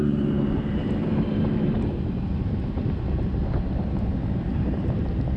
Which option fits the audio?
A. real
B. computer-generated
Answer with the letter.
B